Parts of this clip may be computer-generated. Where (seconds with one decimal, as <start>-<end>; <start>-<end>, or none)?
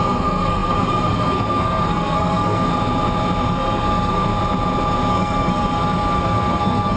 0.0-2.7; 3.5-4.3; 5.1-7.0